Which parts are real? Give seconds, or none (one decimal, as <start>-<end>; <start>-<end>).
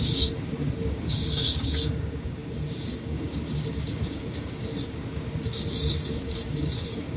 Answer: none